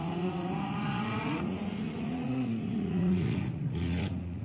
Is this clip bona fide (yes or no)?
no